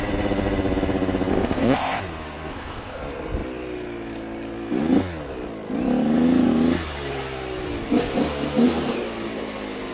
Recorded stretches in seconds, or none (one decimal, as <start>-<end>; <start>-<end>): 0.0-1.3; 2.0-2.5; 3.0-9.9